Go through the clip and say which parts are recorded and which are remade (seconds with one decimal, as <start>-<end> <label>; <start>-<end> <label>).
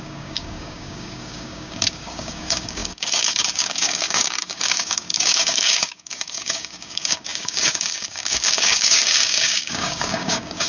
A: 0.0-10.7 remade